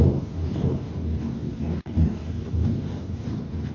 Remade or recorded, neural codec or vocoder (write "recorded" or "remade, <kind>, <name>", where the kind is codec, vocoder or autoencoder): remade, codec, DAC